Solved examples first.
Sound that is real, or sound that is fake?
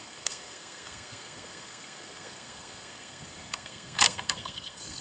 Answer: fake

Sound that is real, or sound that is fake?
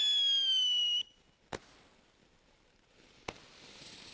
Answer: real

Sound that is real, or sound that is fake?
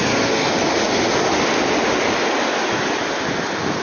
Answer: real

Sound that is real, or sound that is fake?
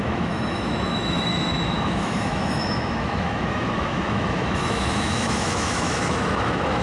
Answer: fake